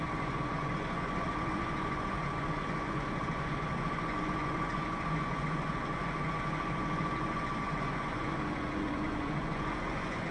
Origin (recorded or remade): remade